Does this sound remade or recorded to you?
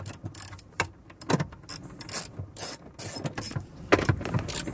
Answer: recorded